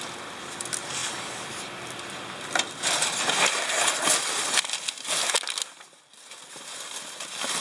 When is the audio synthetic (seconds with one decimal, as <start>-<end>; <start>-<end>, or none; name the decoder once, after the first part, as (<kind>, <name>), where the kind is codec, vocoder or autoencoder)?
none